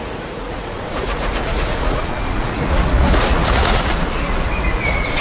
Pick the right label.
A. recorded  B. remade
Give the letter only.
B